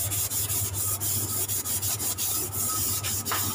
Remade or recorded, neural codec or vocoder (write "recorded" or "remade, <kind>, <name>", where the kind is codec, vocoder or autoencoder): recorded